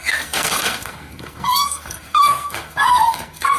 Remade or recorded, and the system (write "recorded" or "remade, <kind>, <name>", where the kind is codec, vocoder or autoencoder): remade, codec, SNAC